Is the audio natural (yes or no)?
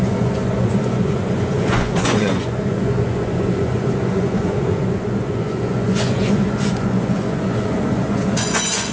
no